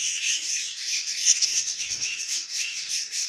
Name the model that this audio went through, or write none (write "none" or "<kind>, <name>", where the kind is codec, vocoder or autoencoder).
codec, DAC